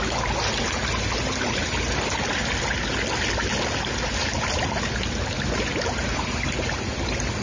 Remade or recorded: recorded